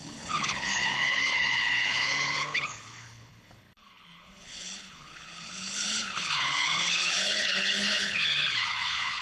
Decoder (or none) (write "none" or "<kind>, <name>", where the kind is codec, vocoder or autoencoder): codec, HILCodec